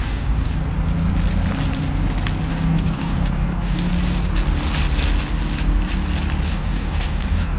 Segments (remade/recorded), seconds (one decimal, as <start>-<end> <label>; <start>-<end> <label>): 0.0-0.6 remade; 0.6-2.5 recorded; 2.5-3.9 remade; 3.9-6.5 recorded; 6.5-7.6 remade